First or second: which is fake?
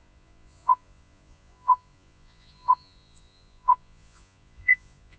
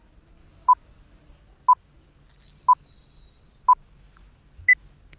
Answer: first